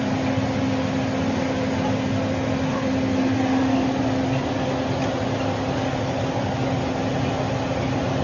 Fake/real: real